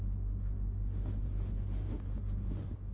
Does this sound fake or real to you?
fake